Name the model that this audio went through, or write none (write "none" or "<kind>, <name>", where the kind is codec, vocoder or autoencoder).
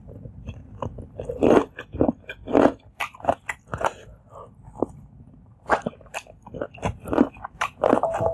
none